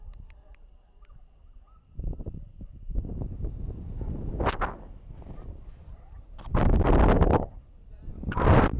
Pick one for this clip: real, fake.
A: real